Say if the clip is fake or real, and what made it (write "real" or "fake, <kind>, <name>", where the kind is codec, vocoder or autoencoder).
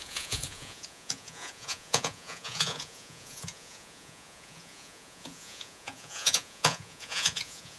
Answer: fake, vocoder, Vocos